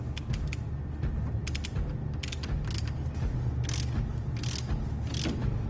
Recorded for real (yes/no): yes